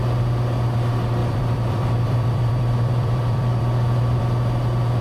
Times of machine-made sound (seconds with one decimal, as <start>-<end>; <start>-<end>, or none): 1.2-4.2